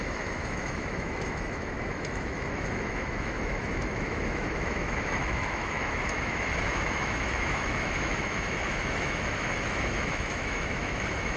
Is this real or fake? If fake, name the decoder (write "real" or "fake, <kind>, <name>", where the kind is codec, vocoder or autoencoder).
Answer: fake, autoencoder, DAC-VAE